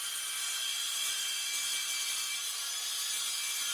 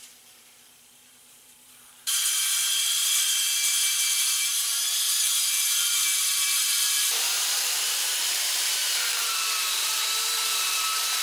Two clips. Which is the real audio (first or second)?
first